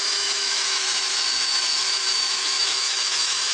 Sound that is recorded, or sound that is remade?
remade